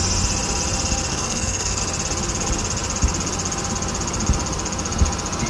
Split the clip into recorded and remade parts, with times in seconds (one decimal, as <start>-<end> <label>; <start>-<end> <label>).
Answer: 0.0-1.1 recorded; 1.1-1.8 remade; 1.8-5.5 recorded